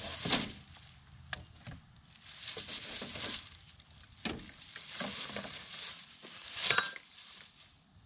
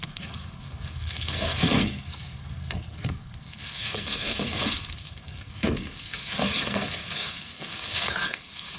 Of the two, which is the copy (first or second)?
second